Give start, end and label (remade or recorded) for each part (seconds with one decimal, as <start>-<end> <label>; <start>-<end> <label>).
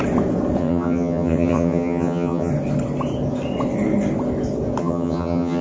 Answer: 0.0-0.6 recorded; 0.6-2.5 remade; 2.5-4.8 recorded; 4.8-5.6 remade